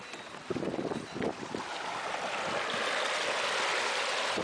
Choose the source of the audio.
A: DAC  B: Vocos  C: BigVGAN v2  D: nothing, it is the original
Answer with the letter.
D